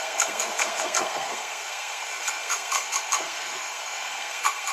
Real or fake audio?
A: fake